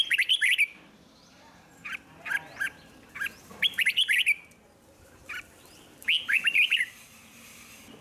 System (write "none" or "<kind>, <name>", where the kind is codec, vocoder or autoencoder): none